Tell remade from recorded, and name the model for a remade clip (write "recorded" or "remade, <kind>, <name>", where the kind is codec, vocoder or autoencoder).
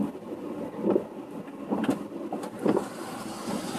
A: recorded